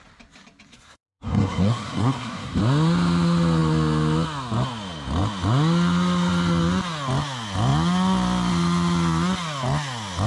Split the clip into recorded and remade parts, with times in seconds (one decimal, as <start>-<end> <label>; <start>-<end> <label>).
0.0-0.7 recorded; 0.7-2.6 remade; 2.6-10.3 recorded